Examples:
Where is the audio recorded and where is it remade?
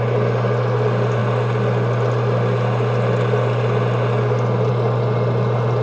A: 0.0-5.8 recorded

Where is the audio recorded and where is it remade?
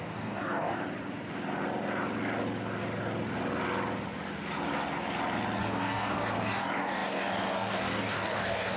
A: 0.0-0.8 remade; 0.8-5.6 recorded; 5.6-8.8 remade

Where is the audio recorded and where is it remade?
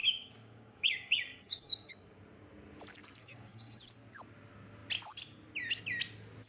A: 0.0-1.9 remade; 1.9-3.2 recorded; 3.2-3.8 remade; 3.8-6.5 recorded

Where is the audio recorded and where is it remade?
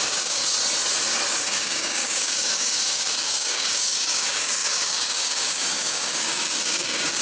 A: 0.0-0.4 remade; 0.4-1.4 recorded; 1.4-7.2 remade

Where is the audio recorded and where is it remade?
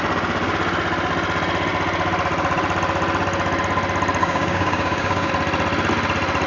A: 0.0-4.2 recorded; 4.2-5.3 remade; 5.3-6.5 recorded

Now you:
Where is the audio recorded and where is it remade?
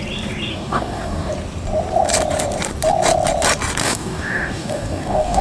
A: 0.0-0.5 recorded; 0.5-1.3 remade; 1.3-3.8 recorded; 3.8-5.4 remade